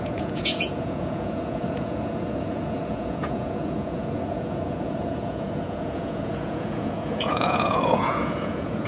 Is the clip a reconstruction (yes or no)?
yes